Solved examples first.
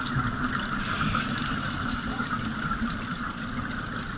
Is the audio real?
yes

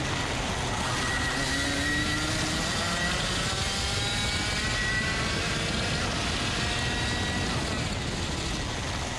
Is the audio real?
yes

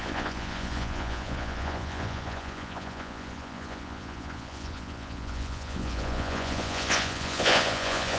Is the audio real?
no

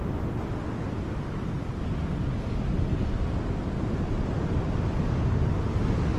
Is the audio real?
yes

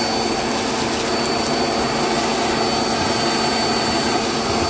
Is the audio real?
yes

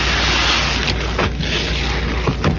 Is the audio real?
yes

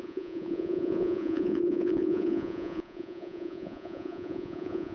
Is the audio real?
no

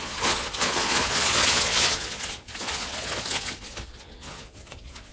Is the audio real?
no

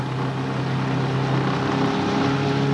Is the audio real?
yes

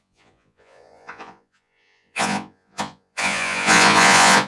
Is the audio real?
no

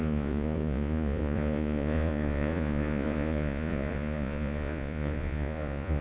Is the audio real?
no